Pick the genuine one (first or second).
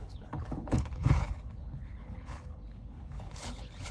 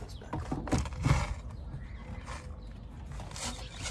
second